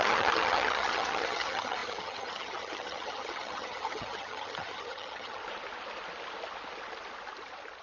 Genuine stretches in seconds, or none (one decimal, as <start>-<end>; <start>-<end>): 5.4-7.8